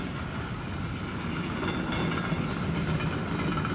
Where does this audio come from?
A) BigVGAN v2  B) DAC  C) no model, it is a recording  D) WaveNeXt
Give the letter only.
C